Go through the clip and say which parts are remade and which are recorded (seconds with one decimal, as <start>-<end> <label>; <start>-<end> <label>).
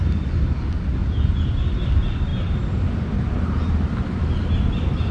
0.0-1.0 recorded; 1.0-1.6 remade; 1.6-5.1 recorded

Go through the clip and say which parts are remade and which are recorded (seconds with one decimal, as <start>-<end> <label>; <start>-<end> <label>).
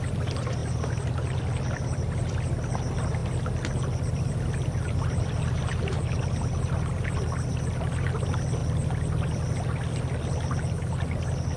0.0-11.6 recorded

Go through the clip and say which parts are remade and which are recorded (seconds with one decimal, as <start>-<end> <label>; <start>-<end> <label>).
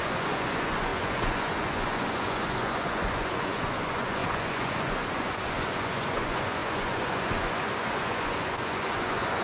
0.0-9.4 remade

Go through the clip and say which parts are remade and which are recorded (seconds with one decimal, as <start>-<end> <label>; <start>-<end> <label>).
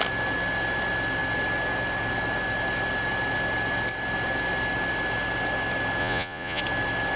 0.0-6.0 recorded; 6.0-6.6 remade; 6.6-7.2 recorded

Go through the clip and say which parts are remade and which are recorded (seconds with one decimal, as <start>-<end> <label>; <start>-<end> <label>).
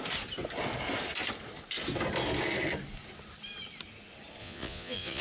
0.0-4.4 recorded; 4.4-5.2 remade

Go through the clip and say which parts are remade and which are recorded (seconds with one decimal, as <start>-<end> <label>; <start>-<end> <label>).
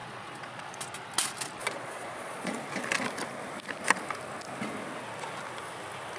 0.0-0.8 remade; 0.8-1.6 recorded; 1.6-2.6 remade; 2.6-6.2 recorded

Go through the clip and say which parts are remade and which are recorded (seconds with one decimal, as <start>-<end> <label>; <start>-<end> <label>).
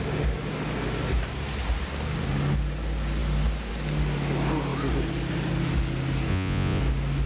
0.0-6.3 recorded; 6.3-6.8 remade; 6.8-7.3 recorded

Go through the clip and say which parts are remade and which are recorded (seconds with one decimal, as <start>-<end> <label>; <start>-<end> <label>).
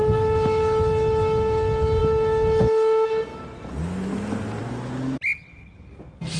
0.0-6.4 recorded